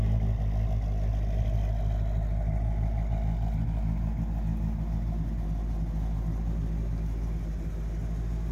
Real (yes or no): yes